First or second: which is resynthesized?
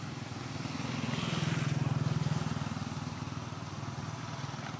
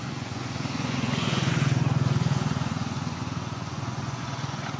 second